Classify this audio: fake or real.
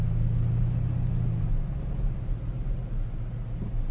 real